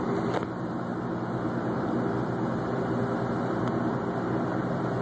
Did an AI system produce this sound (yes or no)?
no